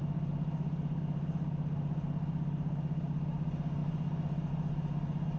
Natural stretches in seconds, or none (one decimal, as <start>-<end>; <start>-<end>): 0.0-5.4